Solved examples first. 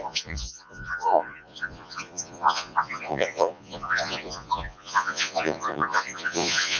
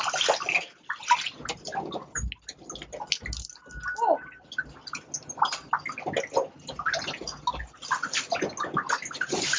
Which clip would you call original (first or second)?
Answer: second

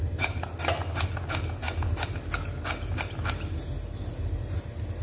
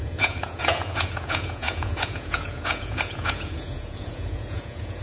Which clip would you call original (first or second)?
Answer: first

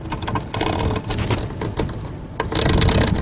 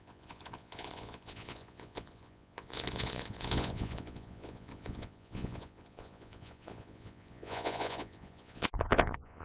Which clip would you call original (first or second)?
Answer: first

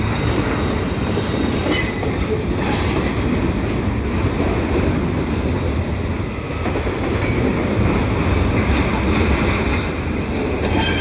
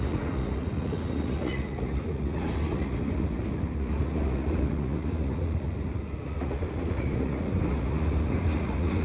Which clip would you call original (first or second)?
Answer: first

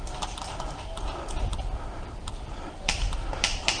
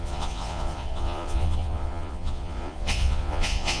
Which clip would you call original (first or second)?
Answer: first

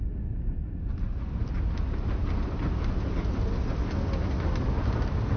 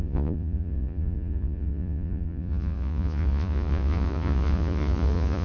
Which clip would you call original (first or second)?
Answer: first